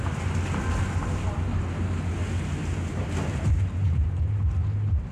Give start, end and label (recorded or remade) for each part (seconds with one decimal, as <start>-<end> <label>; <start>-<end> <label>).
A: 0.0-2.6 recorded; 2.6-4.4 remade; 4.4-5.1 recorded

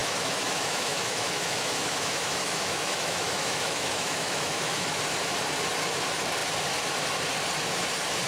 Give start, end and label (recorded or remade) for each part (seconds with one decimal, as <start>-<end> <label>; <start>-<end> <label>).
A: 0.0-5.0 remade; 5.0-8.3 recorded

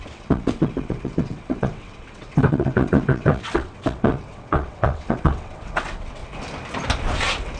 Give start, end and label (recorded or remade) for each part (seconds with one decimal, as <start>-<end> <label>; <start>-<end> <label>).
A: 0.0-6.2 remade; 6.2-7.6 recorded

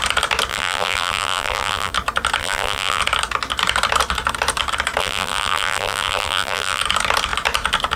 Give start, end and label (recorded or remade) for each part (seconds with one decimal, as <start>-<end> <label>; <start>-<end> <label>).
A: 0.0-0.5 recorded; 0.5-1.9 remade; 1.9-2.4 recorded; 2.4-3.0 remade; 3.0-5.0 recorded; 5.0-6.8 remade; 6.8-8.0 recorded

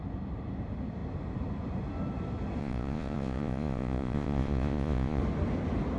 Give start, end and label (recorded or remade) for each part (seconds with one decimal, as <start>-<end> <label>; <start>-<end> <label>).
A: 0.0-2.6 recorded; 2.6-5.2 remade; 5.2-6.0 recorded

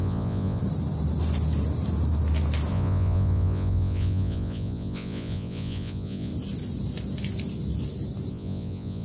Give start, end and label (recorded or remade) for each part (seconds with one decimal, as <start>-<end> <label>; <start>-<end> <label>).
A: 0.0-0.6 remade; 0.6-2.7 recorded; 2.7-6.3 remade; 6.3-8.3 recorded; 8.3-9.0 remade